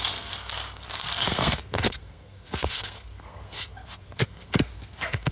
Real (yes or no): no